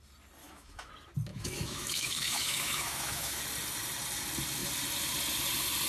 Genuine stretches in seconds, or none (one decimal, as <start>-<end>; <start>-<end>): 0.0-0.4; 0.9-1.3; 3.4-5.9